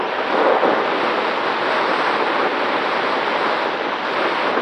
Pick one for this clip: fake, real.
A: real